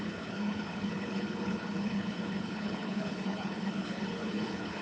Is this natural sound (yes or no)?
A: no